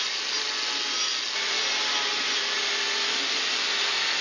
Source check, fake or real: real